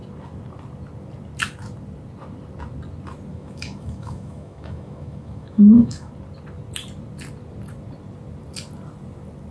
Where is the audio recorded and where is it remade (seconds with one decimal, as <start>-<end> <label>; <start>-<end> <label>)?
0.0-3.3 recorded; 3.3-6.1 remade; 6.1-9.5 recorded

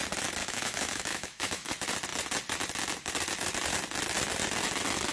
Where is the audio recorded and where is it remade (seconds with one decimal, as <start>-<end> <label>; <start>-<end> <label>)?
0.0-0.4 recorded; 0.4-1.7 remade; 1.7-5.1 recorded

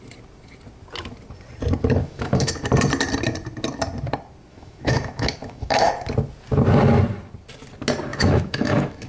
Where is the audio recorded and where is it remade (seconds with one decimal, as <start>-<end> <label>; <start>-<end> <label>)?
0.0-2.0 recorded; 2.0-2.5 remade; 2.5-4.5 recorded; 4.5-5.9 remade; 5.9-8.1 recorded; 8.1-9.1 remade

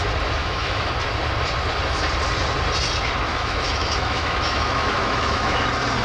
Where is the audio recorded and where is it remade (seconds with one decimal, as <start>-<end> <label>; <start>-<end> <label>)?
0.0-0.4 recorded; 0.4-0.9 remade; 0.9-3.3 recorded; 3.3-5.6 remade; 5.6-6.0 recorded

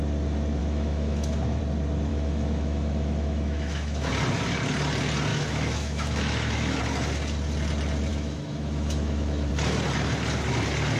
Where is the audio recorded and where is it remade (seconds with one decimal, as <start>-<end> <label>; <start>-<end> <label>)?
0.0-0.6 recorded; 0.6-1.6 remade; 1.6-2.1 recorded; 2.1-4.1 remade; 4.1-5.3 recorded; 5.3-6.8 remade; 6.8-8.1 recorded; 8.1-9.5 remade; 9.5-11.0 recorded

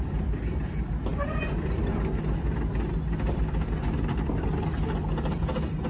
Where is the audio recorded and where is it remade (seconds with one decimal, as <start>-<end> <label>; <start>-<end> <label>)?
0.0-5.9 recorded